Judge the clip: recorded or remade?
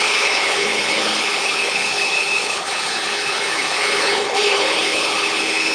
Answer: remade